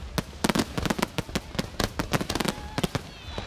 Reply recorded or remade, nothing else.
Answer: recorded